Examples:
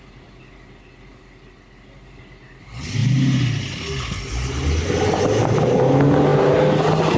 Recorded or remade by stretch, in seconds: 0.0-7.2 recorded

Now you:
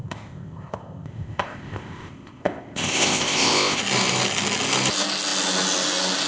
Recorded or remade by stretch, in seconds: 0.0-3.8 remade; 3.8-6.3 recorded

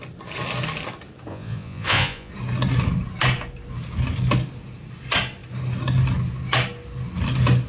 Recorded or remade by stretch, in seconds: 0.0-1.3 recorded; 1.3-2.3 remade; 2.3-7.7 recorded

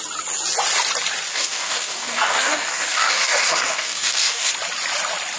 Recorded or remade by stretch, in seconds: 0.0-1.3 recorded; 1.3-4.5 remade; 4.5-5.4 recorded

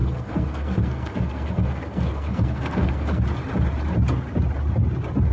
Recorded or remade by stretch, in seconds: 0.0-3.2 remade; 3.2-5.3 recorded

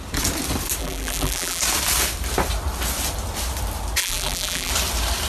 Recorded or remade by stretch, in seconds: 0.0-0.8 recorded; 0.8-1.6 remade; 1.6-4.0 recorded; 4.0-4.7 remade; 4.7-5.3 recorded